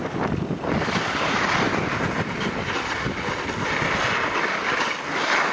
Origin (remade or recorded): recorded